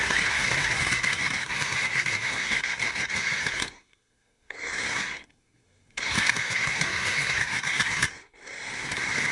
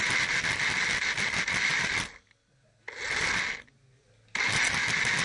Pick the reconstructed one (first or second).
first